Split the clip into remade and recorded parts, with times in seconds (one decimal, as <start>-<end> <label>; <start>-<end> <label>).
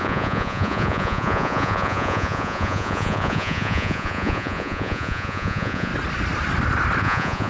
0.0-5.9 remade; 5.9-7.0 recorded; 7.0-7.5 remade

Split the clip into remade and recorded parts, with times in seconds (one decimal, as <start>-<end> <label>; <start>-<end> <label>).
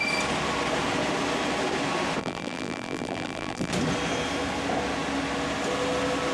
0.0-2.2 recorded; 2.2-3.7 remade; 3.7-6.3 recorded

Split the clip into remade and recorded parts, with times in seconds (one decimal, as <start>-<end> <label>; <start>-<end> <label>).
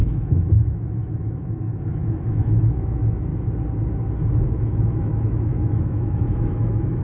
0.0-3.3 remade; 3.3-4.3 recorded; 4.3-7.0 remade